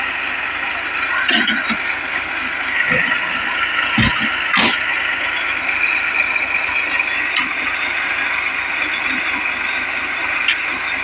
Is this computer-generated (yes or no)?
no